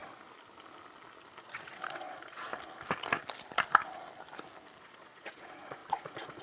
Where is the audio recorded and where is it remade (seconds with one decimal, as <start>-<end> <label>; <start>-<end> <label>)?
0.0-1.4 recorded; 1.4-2.5 remade; 2.5-4.8 recorded; 4.8-6.4 remade